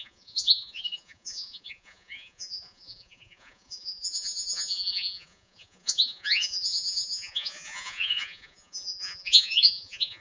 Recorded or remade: remade